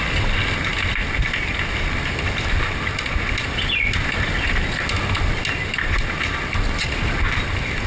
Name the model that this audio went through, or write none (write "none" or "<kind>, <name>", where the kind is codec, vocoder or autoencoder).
none